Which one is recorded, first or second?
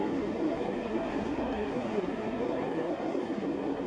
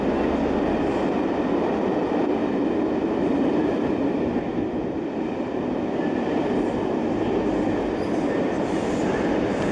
second